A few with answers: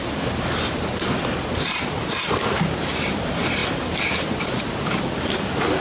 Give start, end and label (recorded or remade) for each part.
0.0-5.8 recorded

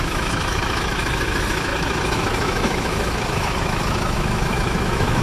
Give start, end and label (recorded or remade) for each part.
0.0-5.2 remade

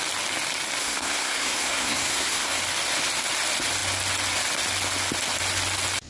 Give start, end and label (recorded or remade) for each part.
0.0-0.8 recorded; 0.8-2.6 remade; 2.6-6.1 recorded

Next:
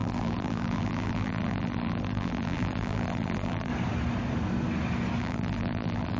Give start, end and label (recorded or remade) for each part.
0.0-3.7 remade; 3.7-5.2 recorded; 5.2-6.2 remade

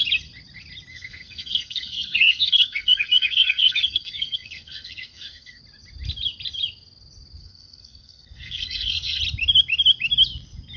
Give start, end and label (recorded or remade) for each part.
0.0-0.9 recorded; 0.9-5.6 remade; 5.6-7.4 recorded; 7.4-9.2 remade; 9.2-10.8 recorded

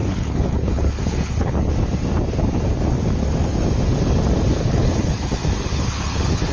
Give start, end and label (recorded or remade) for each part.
0.0-1.7 remade; 1.7-4.6 recorded; 4.6-5.3 remade; 5.3-5.7 recorded; 5.7-6.5 remade